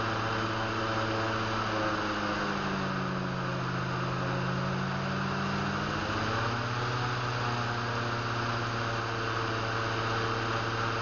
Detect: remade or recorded recorded